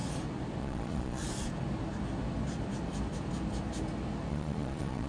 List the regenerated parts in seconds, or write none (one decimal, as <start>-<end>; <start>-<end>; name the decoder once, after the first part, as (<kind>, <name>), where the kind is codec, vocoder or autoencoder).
0.6-1.2 (vocoder, Vocos); 4.3-5.1